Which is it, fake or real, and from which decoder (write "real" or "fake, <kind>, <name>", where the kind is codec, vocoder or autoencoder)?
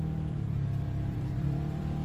fake, vocoder, BigVGAN v2